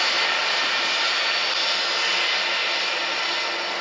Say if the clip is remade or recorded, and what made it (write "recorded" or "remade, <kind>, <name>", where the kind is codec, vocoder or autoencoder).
recorded